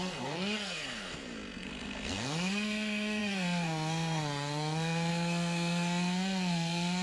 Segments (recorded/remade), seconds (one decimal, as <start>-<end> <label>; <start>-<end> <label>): 0.0-7.0 remade